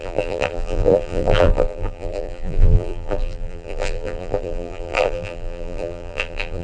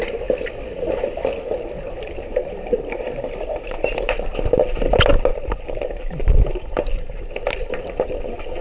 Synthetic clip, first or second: first